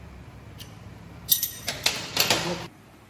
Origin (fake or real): fake